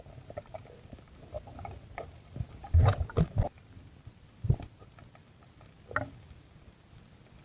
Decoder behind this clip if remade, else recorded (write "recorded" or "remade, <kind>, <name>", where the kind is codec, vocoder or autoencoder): recorded